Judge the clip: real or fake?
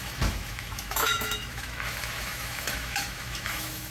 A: fake